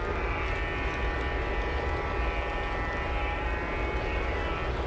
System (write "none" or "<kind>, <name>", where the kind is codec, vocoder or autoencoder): none